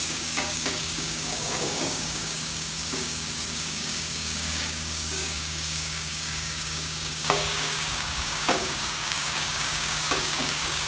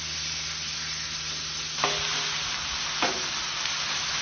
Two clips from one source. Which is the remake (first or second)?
first